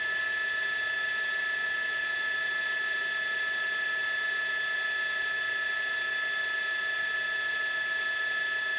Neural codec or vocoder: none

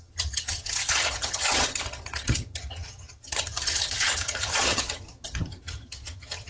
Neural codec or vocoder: vocoder, HiFi-GAN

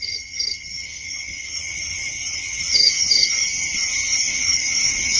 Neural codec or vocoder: vocoder, HiFi-GAN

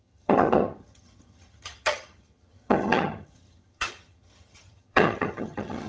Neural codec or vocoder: vocoder, HiFi-GAN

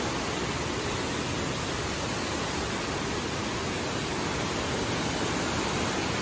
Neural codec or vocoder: none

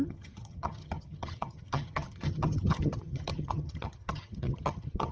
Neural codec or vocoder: vocoder, HiFi-GAN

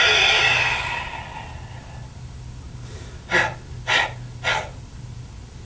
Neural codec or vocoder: none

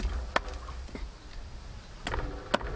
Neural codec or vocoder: none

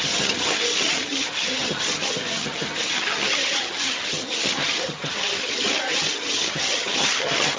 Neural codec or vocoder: vocoder, HiFi-GAN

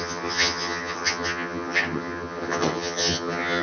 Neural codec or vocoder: vocoder, HiFi-GAN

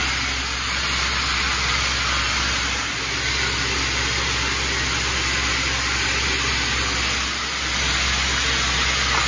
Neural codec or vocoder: none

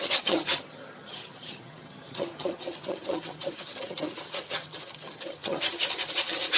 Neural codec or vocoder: vocoder, HiFi-GAN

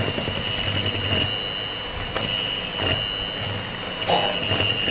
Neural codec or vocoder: none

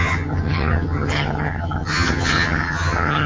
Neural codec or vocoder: vocoder, HiFi-GAN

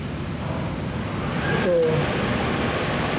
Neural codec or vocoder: none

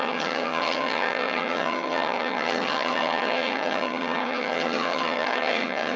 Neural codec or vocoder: vocoder, HiFi-GAN